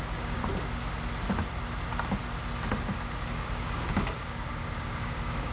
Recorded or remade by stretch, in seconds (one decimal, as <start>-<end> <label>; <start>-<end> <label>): 0.0-0.4 remade; 0.4-3.3 recorded; 3.3-5.5 remade